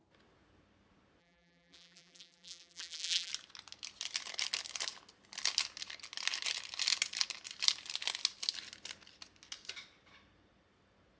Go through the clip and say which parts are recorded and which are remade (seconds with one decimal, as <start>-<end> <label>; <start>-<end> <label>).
0.0-1.2 recorded; 1.2-3.3 remade; 3.3-11.2 recorded

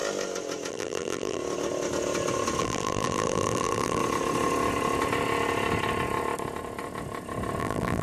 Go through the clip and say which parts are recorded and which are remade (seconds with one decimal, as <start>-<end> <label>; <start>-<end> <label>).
0.0-0.7 recorded; 0.7-1.4 remade; 1.4-2.6 recorded; 2.6-4.0 remade; 4.0-7.6 recorded; 7.6-8.0 remade

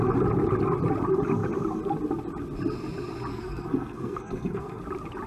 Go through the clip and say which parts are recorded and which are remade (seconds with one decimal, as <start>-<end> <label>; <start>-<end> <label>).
0.0-3.3 recorded; 3.3-4.8 remade; 4.8-5.3 recorded

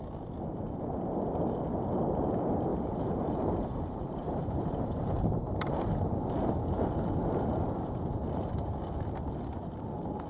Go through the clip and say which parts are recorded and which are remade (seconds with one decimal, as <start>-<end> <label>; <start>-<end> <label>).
0.0-2.7 recorded; 2.7-6.1 remade; 6.1-10.3 recorded

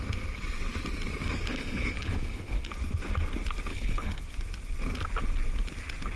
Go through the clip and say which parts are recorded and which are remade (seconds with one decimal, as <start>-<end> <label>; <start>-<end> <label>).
0.0-1.5 recorded; 1.5-2.7 remade; 2.7-3.7 recorded; 3.7-4.2 remade; 4.2-6.2 recorded